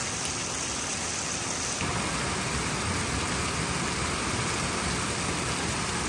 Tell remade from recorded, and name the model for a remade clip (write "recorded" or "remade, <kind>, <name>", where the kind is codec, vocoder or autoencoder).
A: recorded